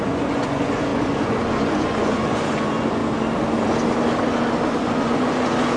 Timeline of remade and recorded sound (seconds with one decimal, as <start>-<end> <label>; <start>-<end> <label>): 0.0-3.0 remade; 3.0-4.7 recorded; 4.7-5.8 remade